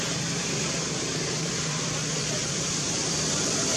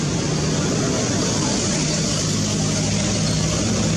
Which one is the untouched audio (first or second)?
second